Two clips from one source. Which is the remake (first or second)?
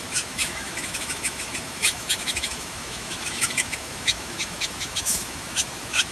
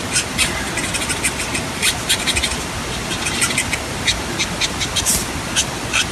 first